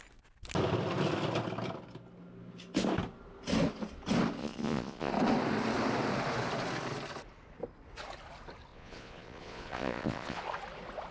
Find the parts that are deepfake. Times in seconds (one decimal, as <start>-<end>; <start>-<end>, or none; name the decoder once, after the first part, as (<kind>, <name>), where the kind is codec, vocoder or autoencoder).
4.4-5.1 (vocoder, Vocos); 8.7-10.4